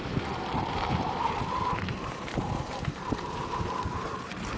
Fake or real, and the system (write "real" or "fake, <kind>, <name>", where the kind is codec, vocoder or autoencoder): fake, vocoder, BigVGAN v2